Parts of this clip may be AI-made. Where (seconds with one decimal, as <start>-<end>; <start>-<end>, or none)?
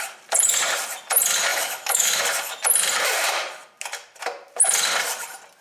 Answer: 1.5-2.2